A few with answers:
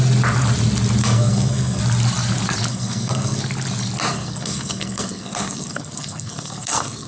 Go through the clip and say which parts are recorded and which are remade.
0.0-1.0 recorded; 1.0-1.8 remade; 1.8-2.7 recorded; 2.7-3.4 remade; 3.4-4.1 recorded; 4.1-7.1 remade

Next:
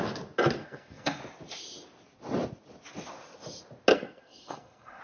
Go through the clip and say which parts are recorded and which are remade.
0.0-0.6 recorded; 0.6-1.2 remade; 1.2-3.9 recorded; 3.9-5.0 remade

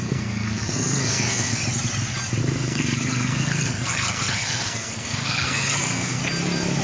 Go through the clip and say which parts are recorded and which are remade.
0.0-1.6 remade; 1.6-2.4 recorded; 2.4-6.2 remade; 6.2-6.8 recorded

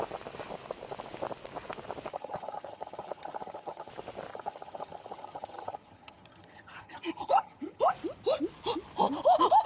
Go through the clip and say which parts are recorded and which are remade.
0.0-2.1 recorded; 2.1-3.9 remade; 3.9-4.3 recorded; 4.3-7.8 remade; 7.8-9.7 recorded

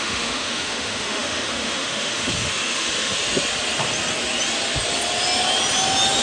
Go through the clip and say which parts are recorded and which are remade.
0.0-3.2 remade; 3.2-6.2 recorded

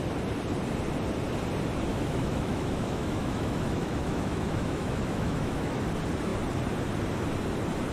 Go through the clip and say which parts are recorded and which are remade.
0.0-1.9 recorded; 1.9-5.8 remade; 5.8-7.9 recorded

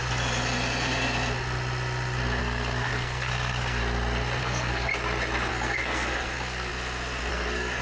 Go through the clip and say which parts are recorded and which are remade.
0.0-2.4 recorded; 2.4-3.8 remade; 3.8-4.4 recorded; 4.4-4.9 remade; 4.9-5.5 recorded; 5.5-6.7 remade; 6.7-7.3 recorded; 7.3-7.8 remade

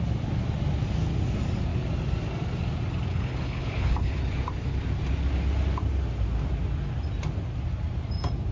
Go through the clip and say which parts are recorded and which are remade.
0.0-3.1 recorded; 3.1-4.2 remade; 4.2-8.5 recorded